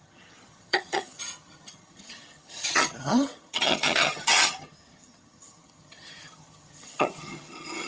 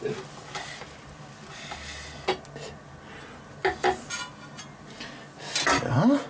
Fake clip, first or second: first